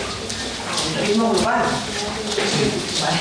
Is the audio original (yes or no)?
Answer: yes